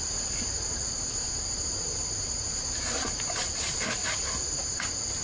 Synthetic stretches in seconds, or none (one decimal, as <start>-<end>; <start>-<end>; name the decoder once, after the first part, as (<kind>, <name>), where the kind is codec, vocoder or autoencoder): 0.0-5.2 (vocoder, BigVGAN v2)